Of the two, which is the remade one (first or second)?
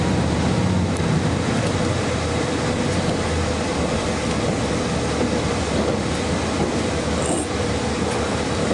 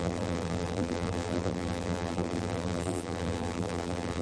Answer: second